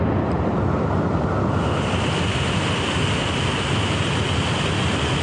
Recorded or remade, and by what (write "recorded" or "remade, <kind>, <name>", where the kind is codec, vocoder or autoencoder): recorded